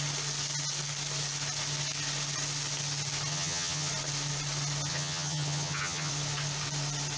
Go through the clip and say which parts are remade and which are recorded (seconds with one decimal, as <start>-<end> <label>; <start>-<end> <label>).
0.0-3.3 recorded; 3.3-3.9 remade; 3.9-4.9 recorded; 4.9-6.1 remade; 6.1-7.2 recorded